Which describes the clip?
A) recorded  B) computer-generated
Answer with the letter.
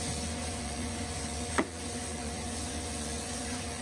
B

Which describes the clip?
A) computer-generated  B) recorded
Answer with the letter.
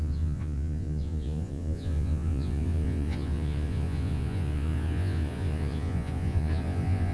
A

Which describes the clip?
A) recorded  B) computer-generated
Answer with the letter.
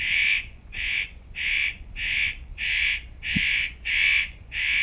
B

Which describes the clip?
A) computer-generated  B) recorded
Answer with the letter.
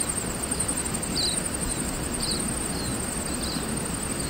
B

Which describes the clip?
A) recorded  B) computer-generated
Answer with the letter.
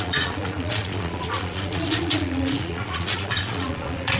B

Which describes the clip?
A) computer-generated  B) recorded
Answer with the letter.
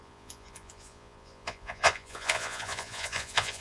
A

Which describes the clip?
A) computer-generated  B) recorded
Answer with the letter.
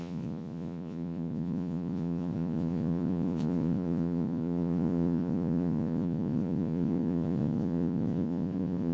A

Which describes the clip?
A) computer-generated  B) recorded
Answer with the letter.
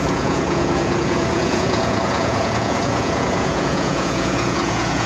A